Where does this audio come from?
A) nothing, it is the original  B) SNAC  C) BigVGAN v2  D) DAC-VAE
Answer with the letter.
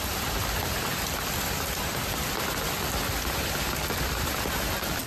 A